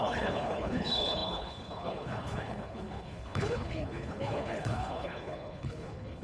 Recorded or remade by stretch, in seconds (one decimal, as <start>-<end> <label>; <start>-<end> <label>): 0.0-6.2 remade